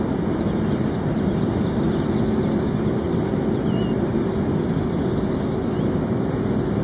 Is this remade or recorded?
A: recorded